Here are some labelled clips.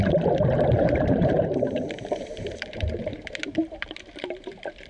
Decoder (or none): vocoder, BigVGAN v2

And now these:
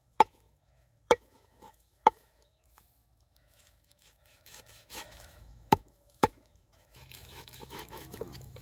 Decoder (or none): autoencoder, DAC-VAE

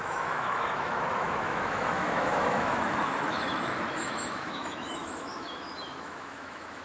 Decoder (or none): autoencoder, DAC-VAE